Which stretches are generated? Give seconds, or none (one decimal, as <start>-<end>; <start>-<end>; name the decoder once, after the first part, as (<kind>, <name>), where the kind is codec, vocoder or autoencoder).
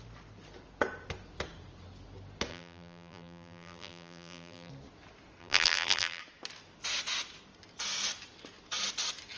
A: 2.5-4.7 (vocoder, BigVGAN v2); 5.4-6.2